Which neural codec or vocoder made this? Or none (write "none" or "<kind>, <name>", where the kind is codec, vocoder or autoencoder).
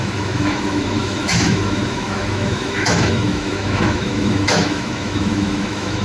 autoencoder, DAC-VAE